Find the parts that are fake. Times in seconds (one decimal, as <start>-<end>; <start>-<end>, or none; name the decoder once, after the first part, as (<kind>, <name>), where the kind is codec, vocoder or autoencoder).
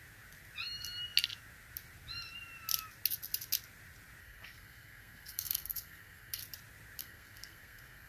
4.2-6.4 (codec, SNAC); 7.0-8.1